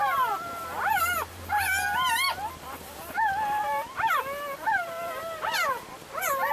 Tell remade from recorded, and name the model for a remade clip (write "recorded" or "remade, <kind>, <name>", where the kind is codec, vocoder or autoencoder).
remade, vocoder, BigVGAN v2